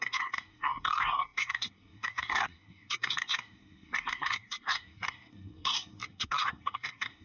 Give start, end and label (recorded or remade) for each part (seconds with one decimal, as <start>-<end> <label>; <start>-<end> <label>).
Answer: 0.0-7.2 remade